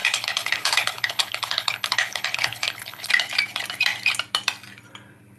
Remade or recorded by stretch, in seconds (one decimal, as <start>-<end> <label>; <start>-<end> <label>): 0.0-3.1 remade; 3.1-5.4 recorded